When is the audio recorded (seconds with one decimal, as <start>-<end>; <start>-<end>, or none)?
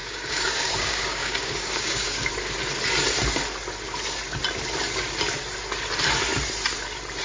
2.3-7.2